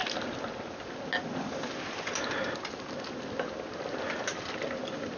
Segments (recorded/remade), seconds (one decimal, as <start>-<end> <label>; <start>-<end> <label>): 0.0-5.2 recorded